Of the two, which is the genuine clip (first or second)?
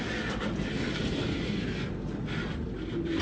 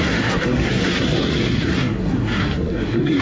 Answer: first